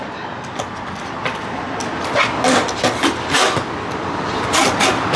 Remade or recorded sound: recorded